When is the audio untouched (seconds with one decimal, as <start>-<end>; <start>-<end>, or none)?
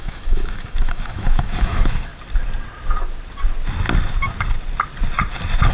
2.1-5.7